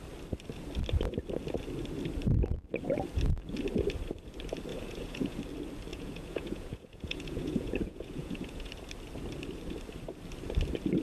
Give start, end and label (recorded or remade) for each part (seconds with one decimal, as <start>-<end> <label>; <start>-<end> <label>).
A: 0.0-4.7 recorded; 4.7-5.4 remade; 5.4-5.9 recorded; 5.9-8.7 remade; 8.7-11.0 recorded